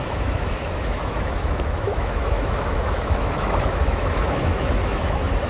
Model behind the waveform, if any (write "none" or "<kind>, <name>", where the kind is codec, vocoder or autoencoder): autoencoder, DAC-VAE